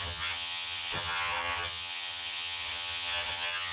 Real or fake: fake